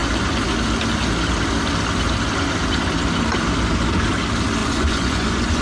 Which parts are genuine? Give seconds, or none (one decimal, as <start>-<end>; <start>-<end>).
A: 0.0-4.6